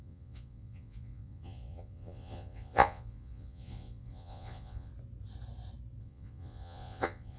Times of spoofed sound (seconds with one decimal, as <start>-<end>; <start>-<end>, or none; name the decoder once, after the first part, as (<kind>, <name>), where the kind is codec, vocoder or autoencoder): 0.0-4.9 (vocoder, Vocos); 6.0-7.4